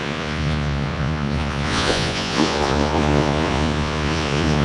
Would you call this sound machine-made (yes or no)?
yes